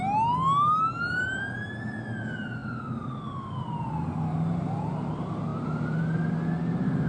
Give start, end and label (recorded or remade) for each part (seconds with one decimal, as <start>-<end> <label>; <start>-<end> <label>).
0.0-7.1 recorded